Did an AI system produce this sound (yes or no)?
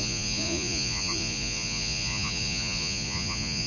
yes